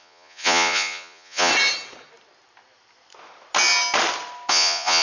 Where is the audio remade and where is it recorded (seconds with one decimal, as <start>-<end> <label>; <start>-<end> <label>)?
0.0-1.5 remade; 1.5-4.5 recorded; 4.5-5.0 remade